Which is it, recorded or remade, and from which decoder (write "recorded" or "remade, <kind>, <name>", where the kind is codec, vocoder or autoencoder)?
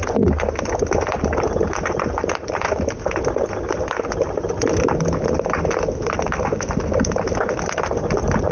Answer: recorded